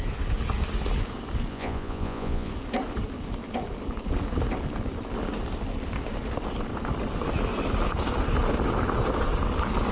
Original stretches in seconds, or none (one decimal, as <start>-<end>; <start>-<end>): 0.0-1.5; 2.5-9.9